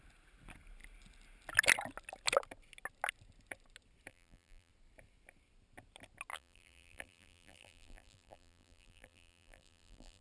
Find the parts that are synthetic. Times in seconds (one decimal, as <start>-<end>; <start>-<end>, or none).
4.1-4.7; 6.3-10.2